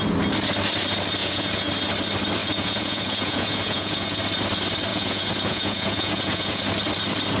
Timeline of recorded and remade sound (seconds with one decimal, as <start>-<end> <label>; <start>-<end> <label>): 0.0-1.2 recorded; 1.2-1.7 remade; 1.7-2.4 recorded; 2.4-4.2 remade; 4.2-4.9 recorded; 4.9-6.6 remade; 6.6-7.4 recorded